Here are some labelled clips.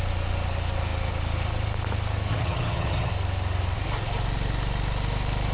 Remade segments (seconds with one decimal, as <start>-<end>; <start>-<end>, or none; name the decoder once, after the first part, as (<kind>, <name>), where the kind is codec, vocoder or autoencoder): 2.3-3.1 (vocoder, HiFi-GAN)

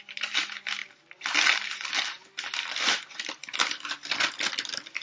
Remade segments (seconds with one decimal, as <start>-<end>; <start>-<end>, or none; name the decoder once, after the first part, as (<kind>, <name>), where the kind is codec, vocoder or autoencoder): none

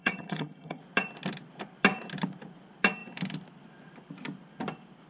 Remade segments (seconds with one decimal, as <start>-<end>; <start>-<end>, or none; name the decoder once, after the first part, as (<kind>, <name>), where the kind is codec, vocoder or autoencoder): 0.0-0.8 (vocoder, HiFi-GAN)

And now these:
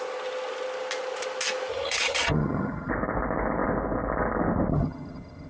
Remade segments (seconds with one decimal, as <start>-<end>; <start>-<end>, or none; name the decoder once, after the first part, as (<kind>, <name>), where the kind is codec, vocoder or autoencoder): 1.7-2.9 (vocoder, HiFi-GAN); 4.7-5.5